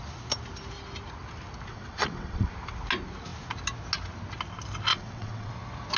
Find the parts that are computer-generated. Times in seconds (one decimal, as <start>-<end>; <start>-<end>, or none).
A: 1.7-2.5; 4.9-5.5